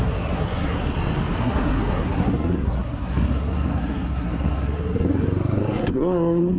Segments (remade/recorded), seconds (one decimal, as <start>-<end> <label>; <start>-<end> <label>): 0.0-0.9 remade; 0.9-1.4 recorded; 1.4-6.6 remade